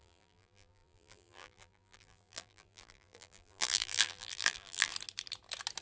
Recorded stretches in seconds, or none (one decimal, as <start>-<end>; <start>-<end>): 4.9-5.8